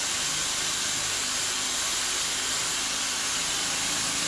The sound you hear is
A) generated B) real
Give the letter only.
A